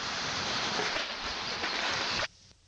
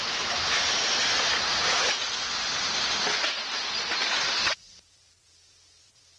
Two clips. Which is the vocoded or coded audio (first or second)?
first